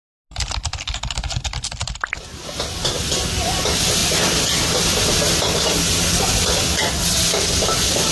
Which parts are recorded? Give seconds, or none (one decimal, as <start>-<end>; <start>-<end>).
0.0-1.8; 3.1-4.0; 5.2-8.1